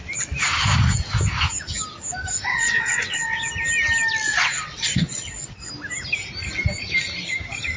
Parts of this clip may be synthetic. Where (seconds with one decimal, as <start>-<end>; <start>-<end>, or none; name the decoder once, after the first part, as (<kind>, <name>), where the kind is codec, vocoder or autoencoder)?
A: 2.5-3.5 (vocoder, WaveNeXt); 4.3-5.7